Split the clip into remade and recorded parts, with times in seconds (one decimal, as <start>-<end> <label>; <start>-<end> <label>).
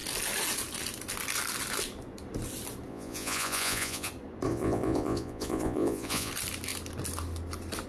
0.0-2.9 recorded; 2.9-4.1 remade; 4.1-4.5 recorded; 4.5-6.3 remade; 6.3-7.9 recorded